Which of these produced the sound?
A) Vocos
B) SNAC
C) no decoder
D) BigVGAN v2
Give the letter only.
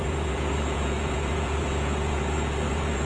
A